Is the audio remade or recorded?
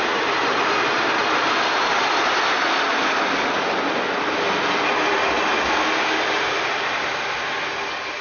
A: recorded